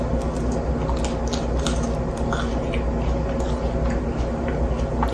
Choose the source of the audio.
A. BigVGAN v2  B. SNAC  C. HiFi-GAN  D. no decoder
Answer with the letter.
D